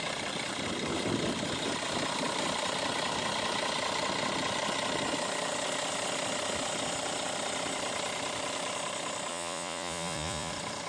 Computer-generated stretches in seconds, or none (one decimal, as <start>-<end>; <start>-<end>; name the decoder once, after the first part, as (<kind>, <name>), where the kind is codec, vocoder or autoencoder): 9.3-10.5 (vocoder, Vocos)